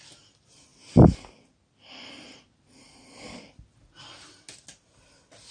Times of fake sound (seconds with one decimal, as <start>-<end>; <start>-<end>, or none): none